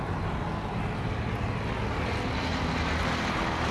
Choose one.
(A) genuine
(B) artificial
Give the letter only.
A